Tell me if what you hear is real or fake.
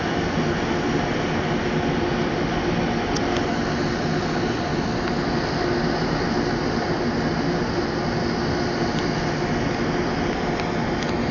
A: real